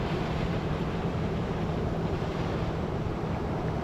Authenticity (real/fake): fake